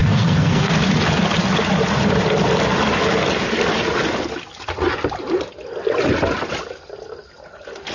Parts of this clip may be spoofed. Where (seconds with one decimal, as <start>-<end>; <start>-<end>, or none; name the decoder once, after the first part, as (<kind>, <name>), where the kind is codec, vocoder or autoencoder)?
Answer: 0.0-0.7 (codec, SNAC)